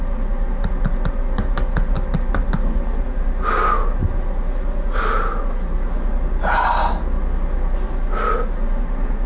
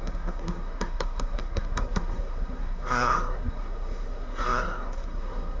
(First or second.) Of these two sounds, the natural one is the first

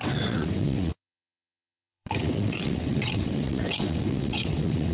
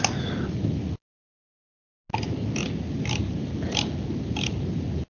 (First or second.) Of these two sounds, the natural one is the second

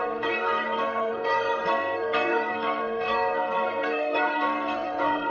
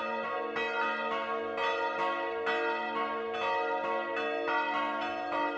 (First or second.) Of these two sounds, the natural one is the second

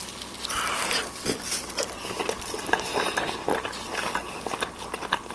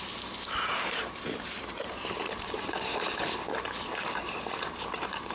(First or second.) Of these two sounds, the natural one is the first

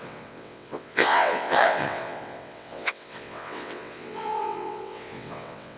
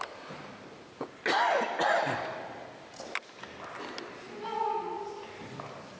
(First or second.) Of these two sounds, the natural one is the second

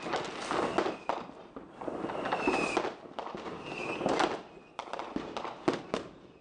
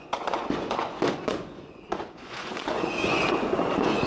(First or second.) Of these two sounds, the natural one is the first